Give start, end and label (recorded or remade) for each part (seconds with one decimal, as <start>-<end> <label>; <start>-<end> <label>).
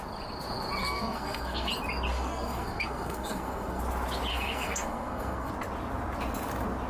0.0-0.8 recorded; 0.8-1.7 remade; 1.7-2.1 recorded; 2.1-3.8 remade; 3.8-4.3 recorded; 4.3-5.5 remade; 5.5-6.9 recorded